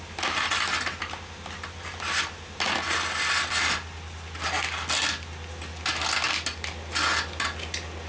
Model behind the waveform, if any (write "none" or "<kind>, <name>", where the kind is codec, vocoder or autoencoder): none